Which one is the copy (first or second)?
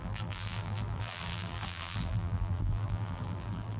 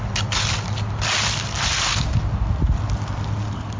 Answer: first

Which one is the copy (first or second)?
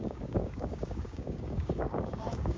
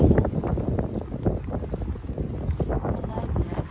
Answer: first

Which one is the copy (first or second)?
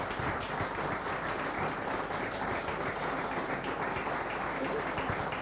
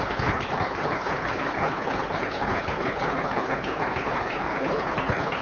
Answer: second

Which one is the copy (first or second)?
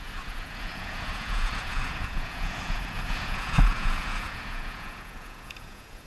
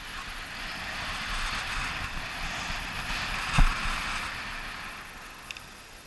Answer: first